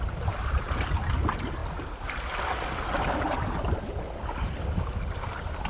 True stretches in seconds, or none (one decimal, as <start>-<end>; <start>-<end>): 0.0-5.7